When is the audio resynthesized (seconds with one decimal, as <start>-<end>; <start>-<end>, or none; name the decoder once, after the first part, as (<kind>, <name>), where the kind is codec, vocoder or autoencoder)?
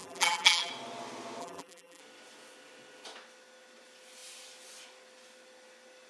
0.0-0.7 (vocoder, BigVGAN v2); 1.4-2.0